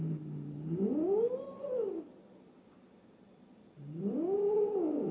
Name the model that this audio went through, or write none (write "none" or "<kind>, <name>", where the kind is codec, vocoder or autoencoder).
none